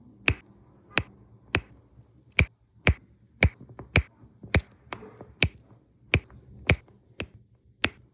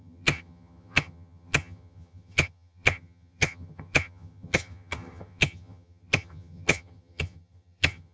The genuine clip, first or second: first